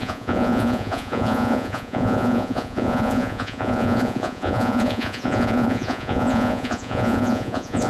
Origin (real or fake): fake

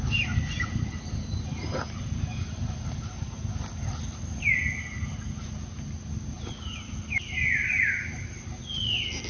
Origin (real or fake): real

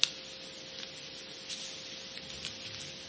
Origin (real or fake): real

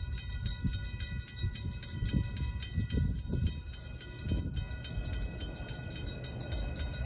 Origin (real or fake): real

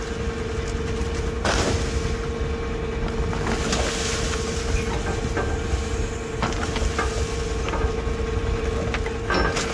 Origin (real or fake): real